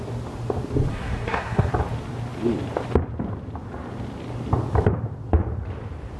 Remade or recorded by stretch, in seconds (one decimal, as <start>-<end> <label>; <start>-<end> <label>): 0.0-0.9 recorded; 0.9-1.7 remade; 1.7-6.2 recorded